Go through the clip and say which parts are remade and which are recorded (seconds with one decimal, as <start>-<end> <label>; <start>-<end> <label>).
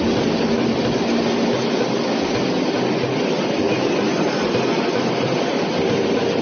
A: 0.0-6.4 recorded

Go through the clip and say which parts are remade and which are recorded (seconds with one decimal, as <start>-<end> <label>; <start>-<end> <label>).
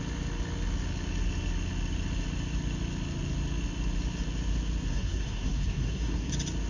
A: 0.0-4.9 recorded; 4.9-6.3 remade; 6.3-6.7 recorded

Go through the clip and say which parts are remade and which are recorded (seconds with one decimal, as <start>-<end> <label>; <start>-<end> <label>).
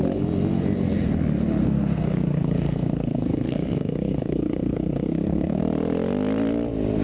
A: 0.0-1.6 recorded; 1.6-5.6 remade; 5.6-7.0 recorded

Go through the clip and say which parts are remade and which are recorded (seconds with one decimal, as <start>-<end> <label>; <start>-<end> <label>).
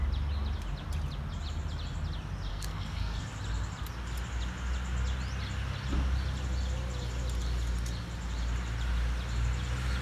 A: 0.0-2.5 recorded; 2.5-3.2 remade; 3.2-10.0 recorded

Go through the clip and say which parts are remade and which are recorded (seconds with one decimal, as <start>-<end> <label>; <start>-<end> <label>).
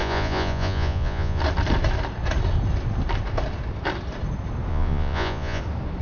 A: 0.0-1.4 remade; 1.4-4.7 recorded; 4.7-5.6 remade; 5.6-6.0 recorded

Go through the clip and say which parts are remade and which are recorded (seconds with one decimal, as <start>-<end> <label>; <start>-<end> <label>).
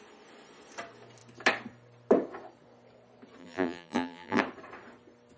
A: 0.0-3.4 recorded; 3.4-4.4 remade; 4.4-5.4 recorded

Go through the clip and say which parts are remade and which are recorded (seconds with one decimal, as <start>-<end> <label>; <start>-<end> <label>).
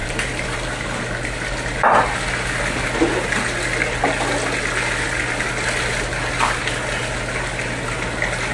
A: 0.0-1.0 remade; 1.0-8.5 recorded